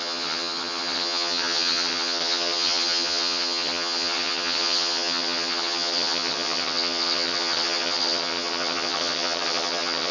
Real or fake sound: fake